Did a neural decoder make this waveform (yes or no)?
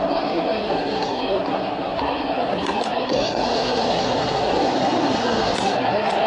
yes